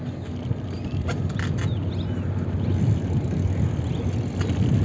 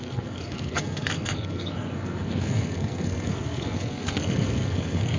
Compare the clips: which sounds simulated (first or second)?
second